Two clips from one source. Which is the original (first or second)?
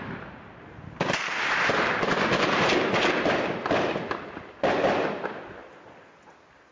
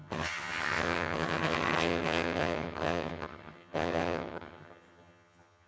first